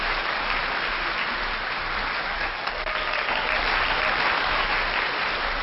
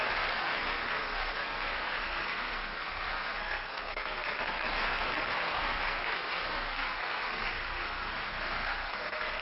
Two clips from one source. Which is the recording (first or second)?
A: first